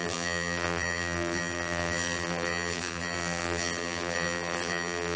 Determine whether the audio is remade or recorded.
remade